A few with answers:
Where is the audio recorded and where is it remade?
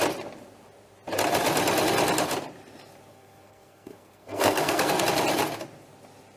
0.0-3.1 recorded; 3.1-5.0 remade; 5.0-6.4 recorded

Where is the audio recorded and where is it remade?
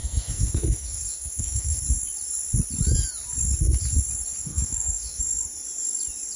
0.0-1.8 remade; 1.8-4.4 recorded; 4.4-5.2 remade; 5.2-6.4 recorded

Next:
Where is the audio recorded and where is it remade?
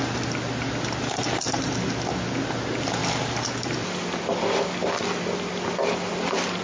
0.0-6.6 recorded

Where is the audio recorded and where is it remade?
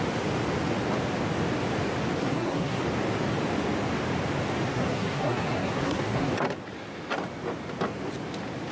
0.0-2.2 recorded; 2.2-2.8 remade; 2.8-4.7 recorded; 4.7-6.3 remade; 6.3-8.7 recorded